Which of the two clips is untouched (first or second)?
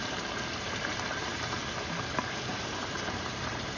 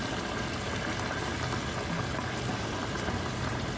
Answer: second